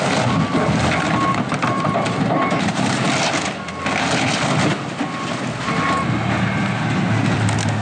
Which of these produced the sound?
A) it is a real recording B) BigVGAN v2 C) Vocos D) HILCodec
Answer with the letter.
A